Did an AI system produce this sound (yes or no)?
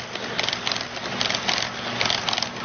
no